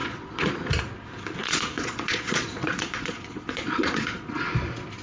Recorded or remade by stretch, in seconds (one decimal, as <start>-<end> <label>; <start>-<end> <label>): 0.0-0.7 remade; 0.7-1.4 recorded; 1.4-4.4 remade; 4.4-5.0 recorded